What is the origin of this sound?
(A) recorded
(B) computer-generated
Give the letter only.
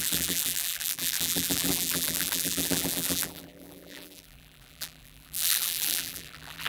B